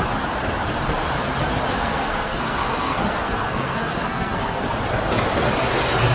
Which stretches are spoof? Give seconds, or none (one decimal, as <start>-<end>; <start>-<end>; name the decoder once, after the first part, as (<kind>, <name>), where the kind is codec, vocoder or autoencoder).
1.7-4.6 (codec, SNAC)